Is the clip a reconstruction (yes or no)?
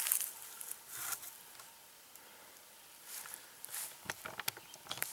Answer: no